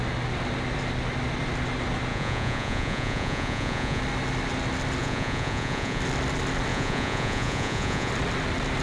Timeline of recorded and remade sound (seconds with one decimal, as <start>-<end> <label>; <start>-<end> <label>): 0.0-2.1 recorded; 2.1-4.0 remade; 4.0-5.0 recorded; 5.0-6.0 remade; 6.0-6.7 recorded; 6.7-8.1 remade; 8.1-8.8 recorded